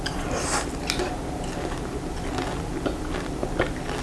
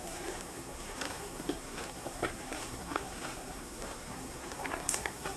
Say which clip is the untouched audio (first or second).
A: first